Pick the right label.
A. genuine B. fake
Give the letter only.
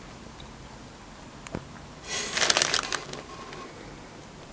A